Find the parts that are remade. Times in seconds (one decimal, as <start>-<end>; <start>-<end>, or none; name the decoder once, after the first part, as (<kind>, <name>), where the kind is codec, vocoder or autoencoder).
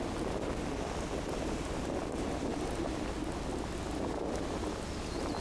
none